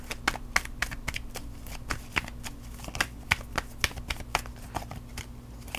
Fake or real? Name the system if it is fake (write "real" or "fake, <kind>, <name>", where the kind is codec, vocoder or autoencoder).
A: real